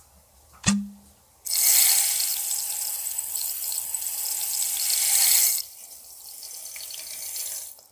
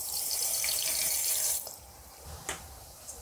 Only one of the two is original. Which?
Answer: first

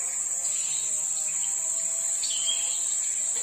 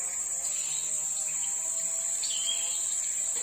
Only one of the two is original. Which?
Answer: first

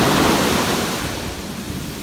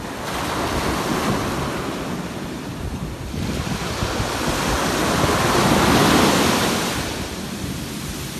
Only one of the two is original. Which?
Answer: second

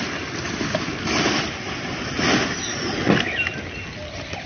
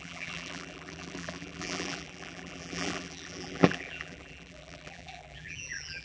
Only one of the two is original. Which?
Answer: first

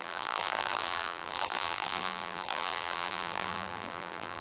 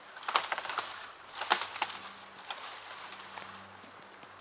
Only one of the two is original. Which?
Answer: second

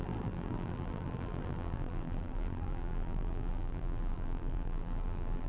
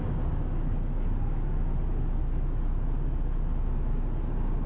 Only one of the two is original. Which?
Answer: second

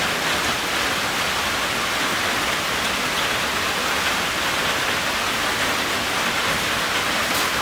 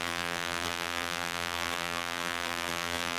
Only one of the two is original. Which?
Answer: first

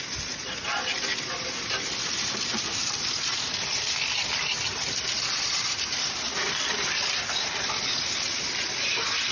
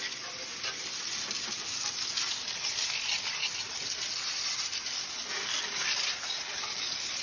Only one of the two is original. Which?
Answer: second